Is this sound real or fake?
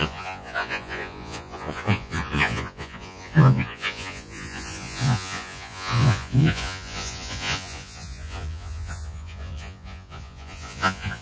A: fake